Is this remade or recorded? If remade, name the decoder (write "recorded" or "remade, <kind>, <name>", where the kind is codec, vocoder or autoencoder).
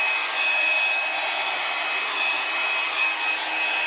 recorded